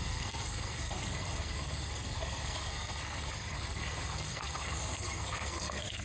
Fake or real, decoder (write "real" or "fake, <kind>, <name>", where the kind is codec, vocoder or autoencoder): fake, codec, SNAC